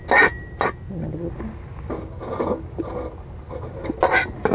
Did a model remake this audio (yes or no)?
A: no